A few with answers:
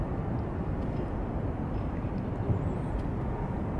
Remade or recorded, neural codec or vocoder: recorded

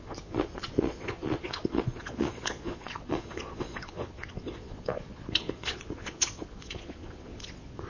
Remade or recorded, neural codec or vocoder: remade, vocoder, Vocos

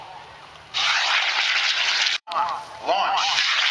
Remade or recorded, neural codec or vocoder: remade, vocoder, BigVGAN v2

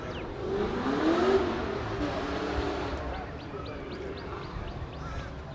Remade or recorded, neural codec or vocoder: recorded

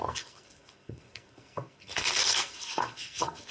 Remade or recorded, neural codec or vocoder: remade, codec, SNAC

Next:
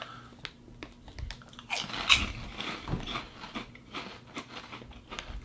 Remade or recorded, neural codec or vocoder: recorded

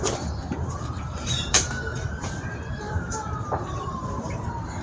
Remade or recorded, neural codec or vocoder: remade, vocoder, BigVGAN v2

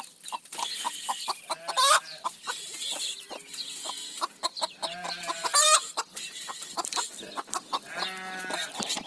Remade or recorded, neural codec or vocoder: recorded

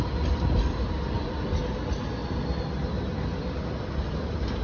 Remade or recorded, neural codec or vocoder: recorded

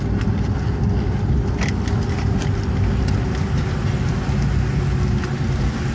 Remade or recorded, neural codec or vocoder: recorded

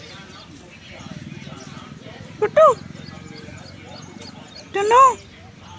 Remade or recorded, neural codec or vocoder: recorded